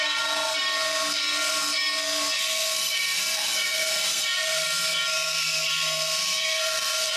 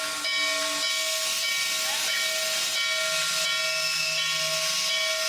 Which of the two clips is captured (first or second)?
second